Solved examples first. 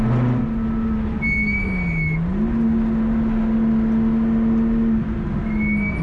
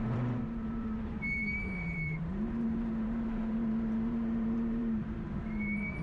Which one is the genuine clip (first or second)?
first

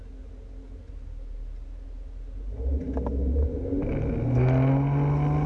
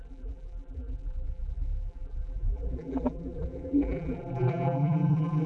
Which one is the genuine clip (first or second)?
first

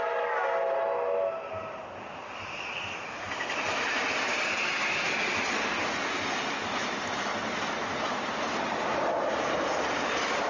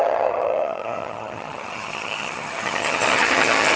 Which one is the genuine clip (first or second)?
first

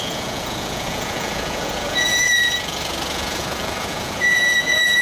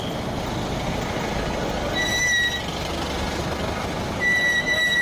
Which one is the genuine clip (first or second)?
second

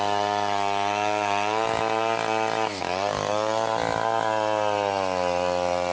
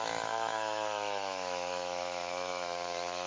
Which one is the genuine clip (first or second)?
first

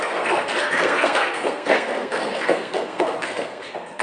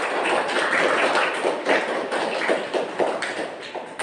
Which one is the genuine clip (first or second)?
second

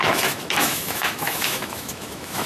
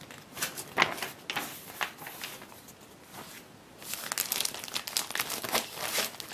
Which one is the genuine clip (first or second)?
second